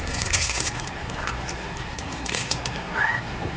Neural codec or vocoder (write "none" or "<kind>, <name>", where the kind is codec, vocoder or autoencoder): codec, SNAC